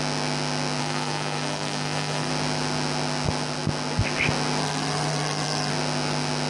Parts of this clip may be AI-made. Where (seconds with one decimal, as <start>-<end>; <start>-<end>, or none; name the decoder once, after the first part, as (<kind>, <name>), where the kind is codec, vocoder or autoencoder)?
0.8-2.3 (codec, SNAC); 4.6-5.7